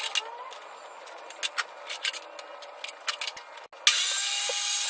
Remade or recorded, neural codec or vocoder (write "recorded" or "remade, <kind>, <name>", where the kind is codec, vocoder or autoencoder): recorded